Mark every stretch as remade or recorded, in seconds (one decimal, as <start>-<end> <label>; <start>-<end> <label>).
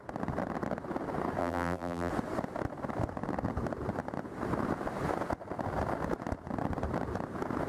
0.0-1.4 recorded; 1.4-2.1 remade; 2.1-7.7 recorded